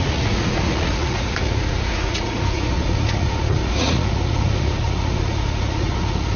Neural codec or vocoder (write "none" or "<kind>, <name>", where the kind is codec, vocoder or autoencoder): vocoder, Vocos